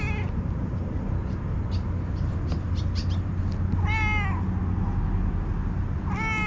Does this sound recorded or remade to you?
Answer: recorded